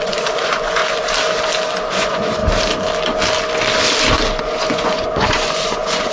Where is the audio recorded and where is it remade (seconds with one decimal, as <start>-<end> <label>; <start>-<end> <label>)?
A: 0.0-0.8 remade; 0.8-1.9 recorded; 1.9-2.4 remade; 2.4-4.4 recorded; 4.4-6.1 remade